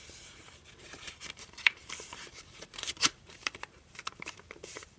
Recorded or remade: remade